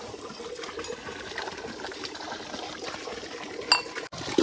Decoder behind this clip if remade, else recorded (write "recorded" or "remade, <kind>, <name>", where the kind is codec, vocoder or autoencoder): recorded